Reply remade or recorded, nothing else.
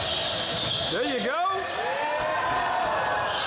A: recorded